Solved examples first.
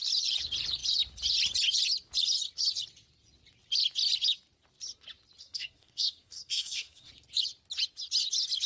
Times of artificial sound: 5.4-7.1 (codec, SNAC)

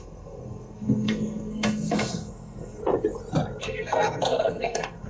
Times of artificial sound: 0.0-2.8 (codec, SNAC); 3.6-5.1

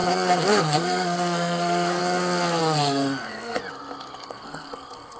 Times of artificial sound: 0.6-2.0 (codec, SNAC); 2.6-3.6; 4.3-5.2

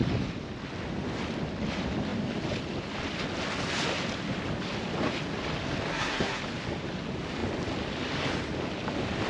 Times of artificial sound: 5.9-6.4 (codec, SNAC)

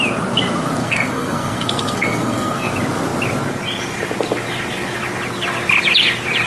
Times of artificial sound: 0.8-2.7 (codec, SNAC)

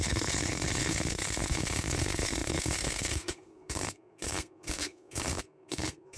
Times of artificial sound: 0.0-6.2 (codec, SNAC)

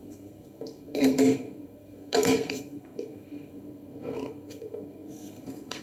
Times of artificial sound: 0.0-5.8 (codec, SNAC)

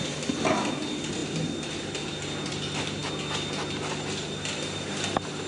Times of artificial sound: none